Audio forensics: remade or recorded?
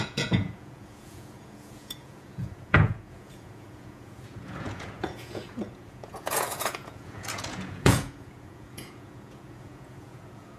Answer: remade